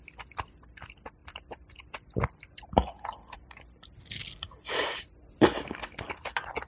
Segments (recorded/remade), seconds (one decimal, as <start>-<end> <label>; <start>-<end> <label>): 0.0-6.7 recorded